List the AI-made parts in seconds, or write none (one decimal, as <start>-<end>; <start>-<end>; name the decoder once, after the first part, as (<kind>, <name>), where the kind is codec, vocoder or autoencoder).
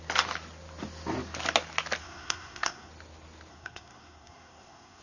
2.0-2.9 (codec, SNAC); 3.5-5.0